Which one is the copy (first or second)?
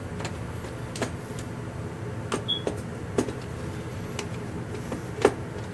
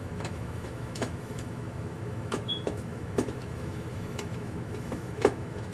second